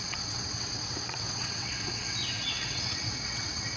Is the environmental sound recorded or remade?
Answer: remade